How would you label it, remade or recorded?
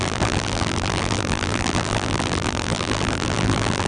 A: remade